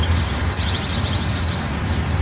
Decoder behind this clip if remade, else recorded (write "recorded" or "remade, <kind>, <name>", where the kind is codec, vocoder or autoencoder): recorded